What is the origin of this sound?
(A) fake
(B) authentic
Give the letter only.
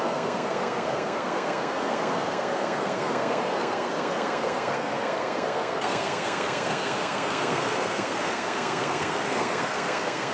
A